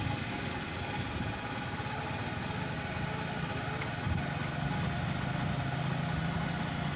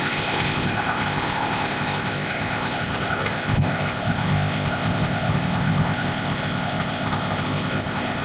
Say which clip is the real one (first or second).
first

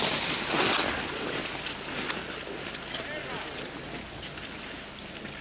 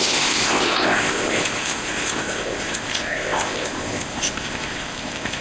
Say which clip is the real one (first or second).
first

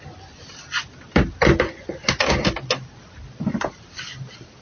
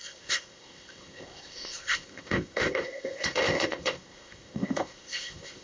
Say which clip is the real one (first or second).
first